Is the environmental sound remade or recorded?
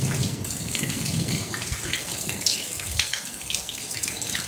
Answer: remade